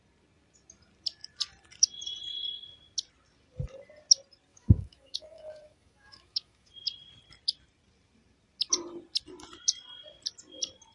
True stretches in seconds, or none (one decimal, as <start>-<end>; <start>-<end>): 0.0-4.5; 6.7-10.9